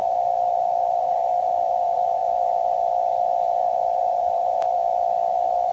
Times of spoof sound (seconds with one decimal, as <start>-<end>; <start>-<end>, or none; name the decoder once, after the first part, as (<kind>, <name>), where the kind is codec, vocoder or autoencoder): 0.0-2.2 (vocoder, BigVGAN v2); 3.6-4.8; 5.3-5.7